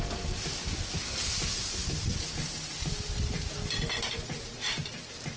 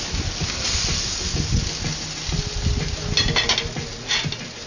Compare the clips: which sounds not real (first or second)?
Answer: first